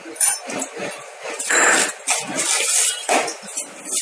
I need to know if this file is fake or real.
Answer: real